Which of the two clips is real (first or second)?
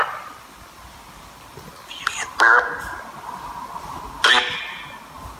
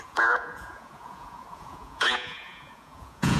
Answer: first